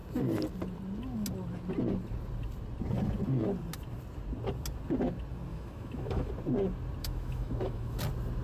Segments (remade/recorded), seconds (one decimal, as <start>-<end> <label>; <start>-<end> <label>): 0.0-5.5 recorded; 5.5-6.3 remade; 6.3-7.0 recorded; 7.0-8.0 remade; 8.0-8.4 recorded